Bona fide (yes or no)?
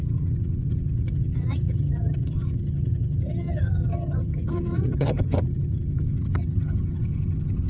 no